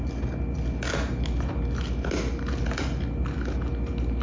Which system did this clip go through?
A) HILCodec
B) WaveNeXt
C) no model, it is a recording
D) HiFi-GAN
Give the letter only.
C